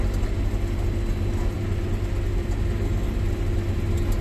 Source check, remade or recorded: recorded